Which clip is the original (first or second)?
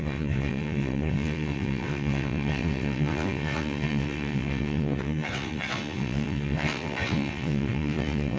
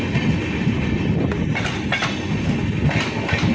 second